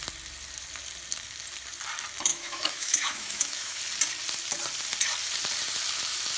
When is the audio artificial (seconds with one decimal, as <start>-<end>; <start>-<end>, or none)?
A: 2.3-3.8